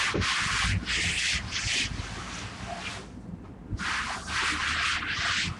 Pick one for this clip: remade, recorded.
recorded